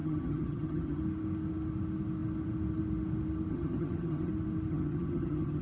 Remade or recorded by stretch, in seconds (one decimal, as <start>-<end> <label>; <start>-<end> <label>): 0.0-1.0 remade; 1.0-3.5 recorded; 3.5-4.3 remade; 4.3-4.7 recorded; 4.7-5.6 remade